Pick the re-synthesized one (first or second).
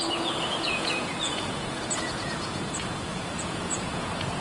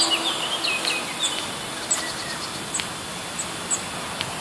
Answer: first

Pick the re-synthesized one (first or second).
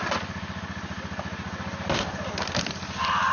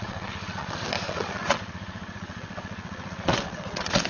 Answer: second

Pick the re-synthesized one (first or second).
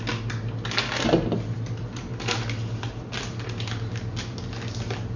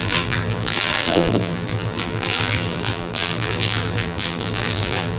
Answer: second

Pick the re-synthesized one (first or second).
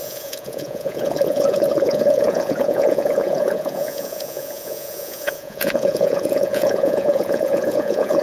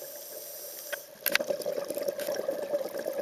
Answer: first